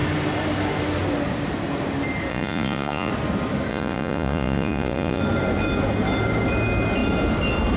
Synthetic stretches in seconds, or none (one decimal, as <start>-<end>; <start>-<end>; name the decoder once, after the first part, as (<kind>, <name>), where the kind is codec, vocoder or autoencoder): 2.3-3.1 (vocoder, Vocos); 3.7-5.2